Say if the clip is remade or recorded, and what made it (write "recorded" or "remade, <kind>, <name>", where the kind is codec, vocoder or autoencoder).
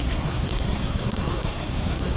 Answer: remade, codec, SNAC